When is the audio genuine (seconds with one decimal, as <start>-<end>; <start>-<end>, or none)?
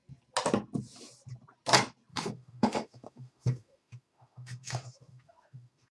0.0-2.1